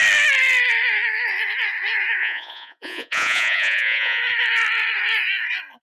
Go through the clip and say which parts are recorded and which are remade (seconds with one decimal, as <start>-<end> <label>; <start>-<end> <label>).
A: 0.0-2.2 recorded; 2.2-4.2 remade; 4.2-5.8 recorded